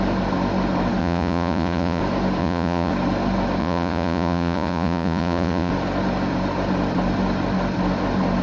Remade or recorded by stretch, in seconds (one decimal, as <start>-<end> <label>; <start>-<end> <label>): 0.0-1.0 recorded; 1.0-2.0 remade; 2.0-2.4 recorded; 2.4-2.9 remade; 2.9-3.6 recorded; 3.6-5.7 remade; 5.7-8.4 recorded